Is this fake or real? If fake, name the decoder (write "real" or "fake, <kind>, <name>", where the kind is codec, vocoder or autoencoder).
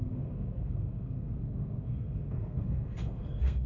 fake, codec, SNAC